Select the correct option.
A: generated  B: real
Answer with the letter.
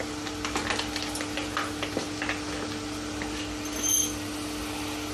B